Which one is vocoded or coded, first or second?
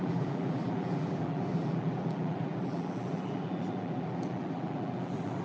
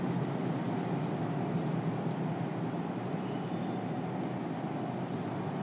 first